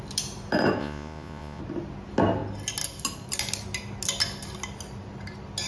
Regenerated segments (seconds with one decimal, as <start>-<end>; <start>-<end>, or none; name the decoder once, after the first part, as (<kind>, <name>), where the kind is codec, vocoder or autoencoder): 0.8-1.6 (vocoder, Vocos)